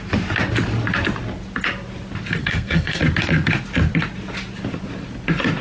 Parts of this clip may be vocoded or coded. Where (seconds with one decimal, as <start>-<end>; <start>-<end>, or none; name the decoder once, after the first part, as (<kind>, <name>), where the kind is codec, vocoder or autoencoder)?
2.4-3.0 (codec, SNAC)